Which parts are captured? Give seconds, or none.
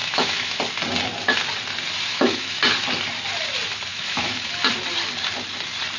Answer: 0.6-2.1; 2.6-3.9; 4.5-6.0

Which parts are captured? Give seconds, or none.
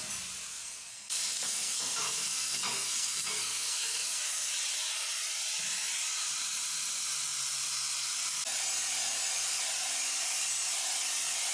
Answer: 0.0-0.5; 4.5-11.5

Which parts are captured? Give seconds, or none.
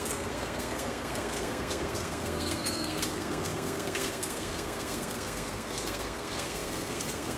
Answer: none